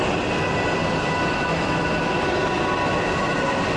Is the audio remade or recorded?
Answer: recorded